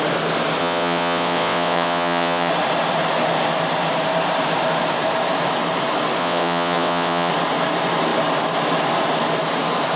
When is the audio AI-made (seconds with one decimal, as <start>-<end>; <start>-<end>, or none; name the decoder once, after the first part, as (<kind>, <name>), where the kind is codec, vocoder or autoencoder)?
0.6-2.5 (vocoder, WaveNeXt); 6.2-7.3